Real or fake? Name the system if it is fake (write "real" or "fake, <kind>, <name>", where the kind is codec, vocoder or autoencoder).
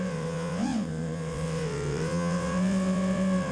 fake, vocoder, WaveNeXt